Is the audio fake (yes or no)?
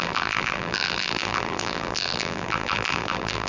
yes